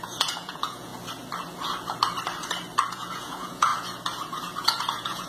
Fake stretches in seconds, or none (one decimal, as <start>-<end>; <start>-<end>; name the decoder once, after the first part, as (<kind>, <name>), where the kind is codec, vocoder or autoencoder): 0.0-0.9 (vocoder, Vocos); 2.9-3.7; 4.6-5.3